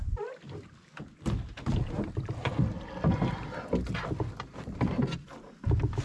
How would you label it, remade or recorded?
recorded